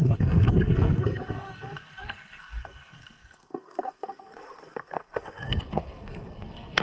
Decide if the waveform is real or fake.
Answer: fake